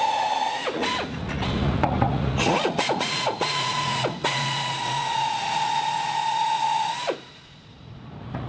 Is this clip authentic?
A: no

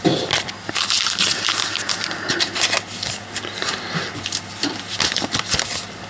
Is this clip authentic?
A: yes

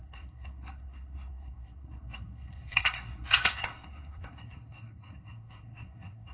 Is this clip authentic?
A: no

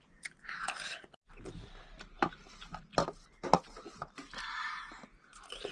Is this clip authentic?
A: yes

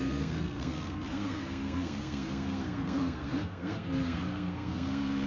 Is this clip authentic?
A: no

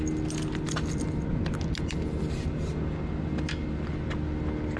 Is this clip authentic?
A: yes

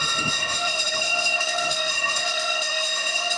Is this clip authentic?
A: no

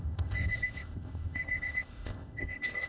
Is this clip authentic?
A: no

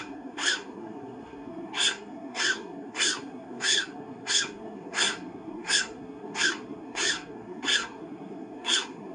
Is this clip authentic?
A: no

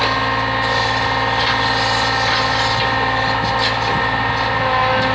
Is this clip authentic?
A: yes